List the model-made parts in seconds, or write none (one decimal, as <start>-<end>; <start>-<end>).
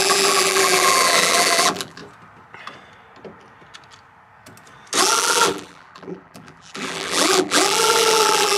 0.0-2.0; 5.0-8.6